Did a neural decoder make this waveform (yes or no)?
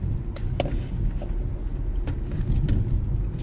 no